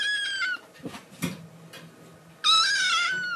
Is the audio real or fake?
real